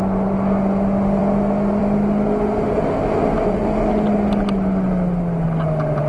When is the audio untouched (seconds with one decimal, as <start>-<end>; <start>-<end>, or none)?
0.0-6.1